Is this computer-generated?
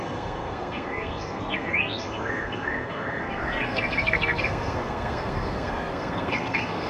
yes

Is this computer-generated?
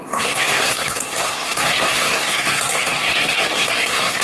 yes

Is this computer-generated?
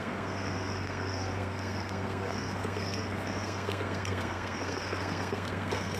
yes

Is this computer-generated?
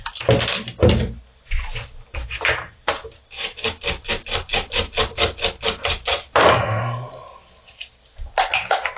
no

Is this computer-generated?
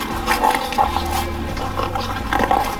no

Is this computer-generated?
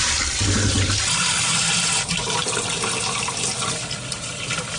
no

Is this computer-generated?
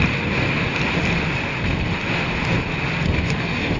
no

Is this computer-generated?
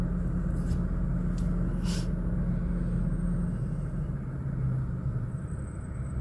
no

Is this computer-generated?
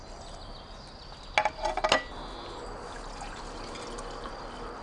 no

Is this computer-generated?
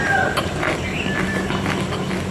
no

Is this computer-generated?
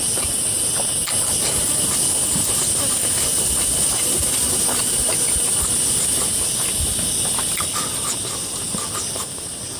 no